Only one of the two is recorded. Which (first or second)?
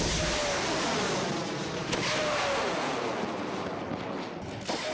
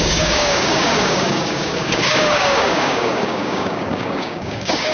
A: first